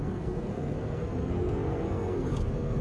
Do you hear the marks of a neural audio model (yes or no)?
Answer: yes